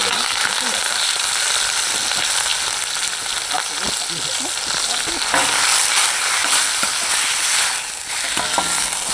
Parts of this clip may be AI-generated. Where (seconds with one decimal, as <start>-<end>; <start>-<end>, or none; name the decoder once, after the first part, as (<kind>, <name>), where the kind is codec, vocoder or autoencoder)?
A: 0.0-1.2 (vocoder, BigVGAN v2)